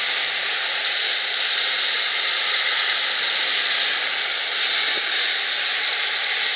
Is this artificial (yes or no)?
no